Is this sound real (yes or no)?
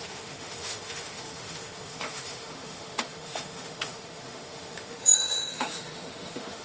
no